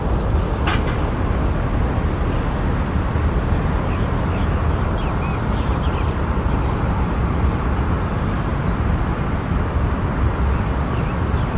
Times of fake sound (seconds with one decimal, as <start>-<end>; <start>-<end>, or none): 8.5-9.9